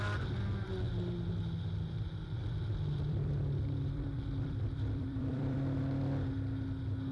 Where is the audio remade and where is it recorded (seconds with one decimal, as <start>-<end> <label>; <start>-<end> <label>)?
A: 0.0-2.4 recorded; 2.4-5.8 remade; 5.8-7.1 recorded